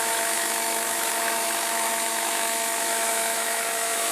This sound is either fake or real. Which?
fake